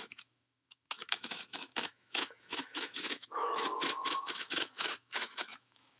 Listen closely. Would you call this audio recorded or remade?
remade